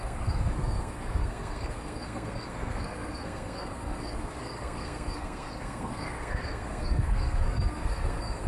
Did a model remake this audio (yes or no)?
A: yes